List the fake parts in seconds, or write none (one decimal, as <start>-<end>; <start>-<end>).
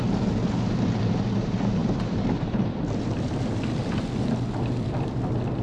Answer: 1.8-4.1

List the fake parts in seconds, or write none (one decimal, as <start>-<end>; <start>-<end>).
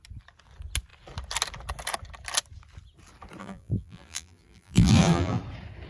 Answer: 3.4-5.4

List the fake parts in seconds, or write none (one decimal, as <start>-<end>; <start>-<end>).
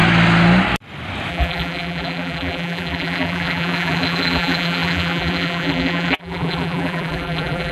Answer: 1.3-7.7